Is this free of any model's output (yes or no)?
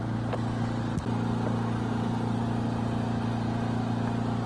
yes